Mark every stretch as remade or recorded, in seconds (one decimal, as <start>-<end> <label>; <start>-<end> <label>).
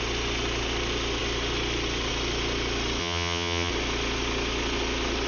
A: 0.0-3.0 recorded; 3.0-3.7 remade; 3.7-5.3 recorded